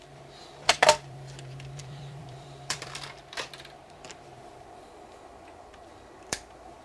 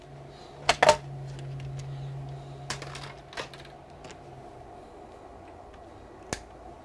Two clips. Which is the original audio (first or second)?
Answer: second